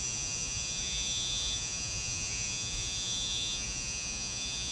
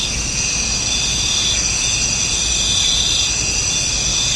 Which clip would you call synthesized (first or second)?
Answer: first